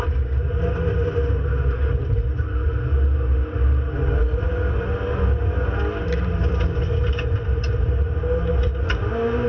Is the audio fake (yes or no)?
no